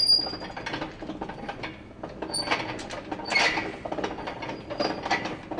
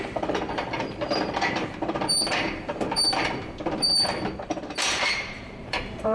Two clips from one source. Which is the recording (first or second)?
first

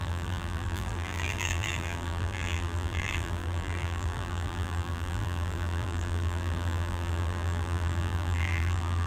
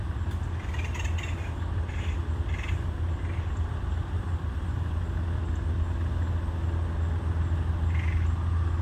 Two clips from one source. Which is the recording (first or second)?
second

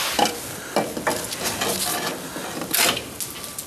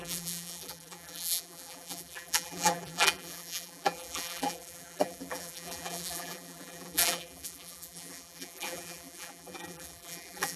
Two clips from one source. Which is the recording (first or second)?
first